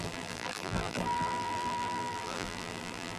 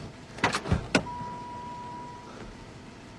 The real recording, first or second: second